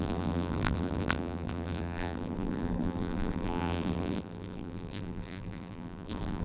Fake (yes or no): yes